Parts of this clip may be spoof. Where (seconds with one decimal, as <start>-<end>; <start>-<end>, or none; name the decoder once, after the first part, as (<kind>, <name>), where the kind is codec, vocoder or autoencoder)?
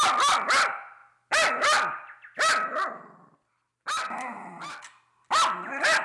none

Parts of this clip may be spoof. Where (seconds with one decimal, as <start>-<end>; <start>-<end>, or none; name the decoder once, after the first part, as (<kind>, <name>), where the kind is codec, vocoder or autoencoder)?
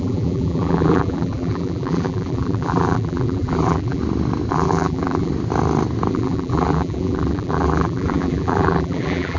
0.0-4.0 (vocoder, BigVGAN v2); 4.5-5.3; 6.1-9.4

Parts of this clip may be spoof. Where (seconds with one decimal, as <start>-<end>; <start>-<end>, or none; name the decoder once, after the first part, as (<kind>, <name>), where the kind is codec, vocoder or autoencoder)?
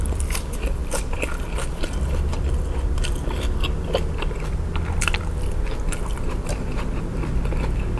0.0-8.0 (vocoder, BigVGAN v2)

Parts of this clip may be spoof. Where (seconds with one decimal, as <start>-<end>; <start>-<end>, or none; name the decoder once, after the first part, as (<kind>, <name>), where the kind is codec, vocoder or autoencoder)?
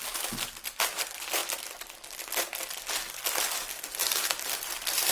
4.0-5.1 (vocoder, BigVGAN v2)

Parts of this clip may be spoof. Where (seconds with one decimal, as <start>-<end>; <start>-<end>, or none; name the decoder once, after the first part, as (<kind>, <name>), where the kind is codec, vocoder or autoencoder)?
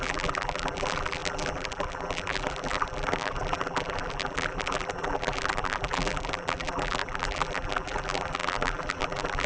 0.0-9.5 (vocoder, BigVGAN v2)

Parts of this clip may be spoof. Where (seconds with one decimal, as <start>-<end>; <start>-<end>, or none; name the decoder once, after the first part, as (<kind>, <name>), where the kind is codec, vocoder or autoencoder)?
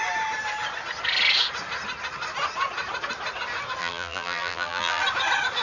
3.8-5.0 (vocoder, BigVGAN v2)